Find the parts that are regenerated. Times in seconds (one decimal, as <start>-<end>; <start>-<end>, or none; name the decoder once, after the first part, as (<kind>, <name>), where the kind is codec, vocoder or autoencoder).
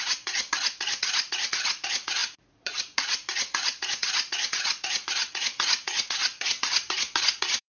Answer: 0.0-7.7 (vocoder, Vocos)